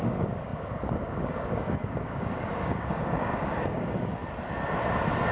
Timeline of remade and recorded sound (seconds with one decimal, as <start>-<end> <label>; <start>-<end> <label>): 0.0-4.2 remade; 4.2-5.3 recorded